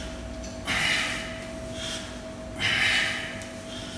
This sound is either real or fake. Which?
real